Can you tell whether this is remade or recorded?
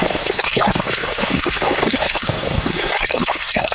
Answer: remade